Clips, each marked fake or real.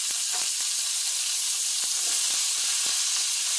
real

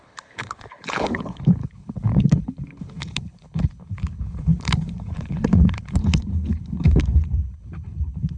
fake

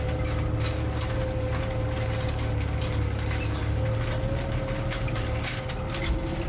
real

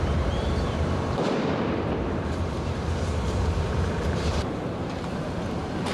fake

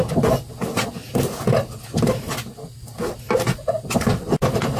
real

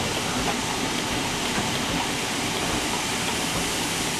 real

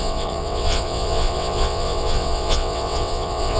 fake